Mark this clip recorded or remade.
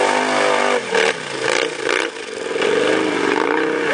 recorded